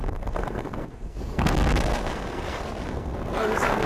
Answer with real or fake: fake